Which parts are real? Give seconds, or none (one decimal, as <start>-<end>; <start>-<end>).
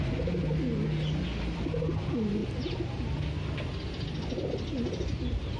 0.0-5.6